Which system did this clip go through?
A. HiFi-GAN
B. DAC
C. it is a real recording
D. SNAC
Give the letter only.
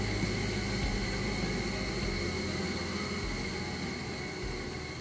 C